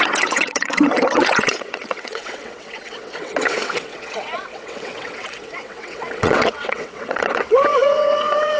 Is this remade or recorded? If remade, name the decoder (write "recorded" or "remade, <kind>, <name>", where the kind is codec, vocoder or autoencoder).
remade, vocoder, WaveNeXt